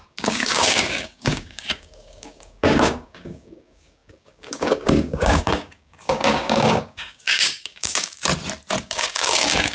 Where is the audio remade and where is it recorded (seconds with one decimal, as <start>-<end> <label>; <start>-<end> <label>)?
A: 0.0-8.3 remade; 8.3-8.8 recorded; 8.8-9.7 remade